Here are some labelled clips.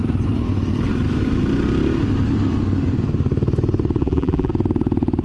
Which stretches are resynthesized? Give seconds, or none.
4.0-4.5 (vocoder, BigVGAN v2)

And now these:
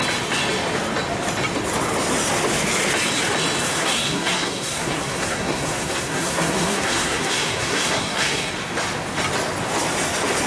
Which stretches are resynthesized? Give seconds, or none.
3.7-8.5 (codec, SNAC)

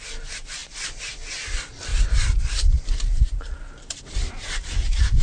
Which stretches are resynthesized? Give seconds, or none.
1.9-4.0 (vocoder, BigVGAN v2)

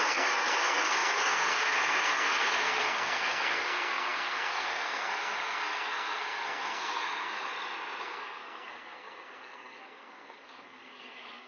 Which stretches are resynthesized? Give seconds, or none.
0.0-7.5 (codec, SNAC); 8.0-11.5

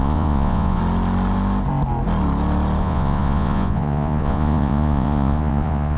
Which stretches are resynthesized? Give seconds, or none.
0.0-0.8 (vocoder, Vocos); 2.8-6.0